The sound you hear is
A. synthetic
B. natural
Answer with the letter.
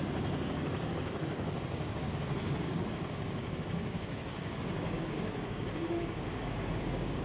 A